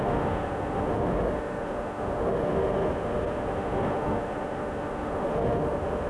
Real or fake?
fake